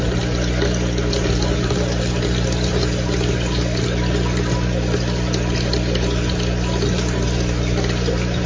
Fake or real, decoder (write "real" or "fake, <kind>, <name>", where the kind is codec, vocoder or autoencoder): real